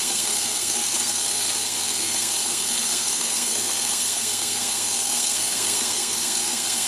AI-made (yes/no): yes